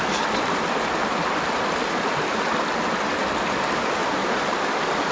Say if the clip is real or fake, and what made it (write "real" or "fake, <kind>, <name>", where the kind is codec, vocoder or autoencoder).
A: real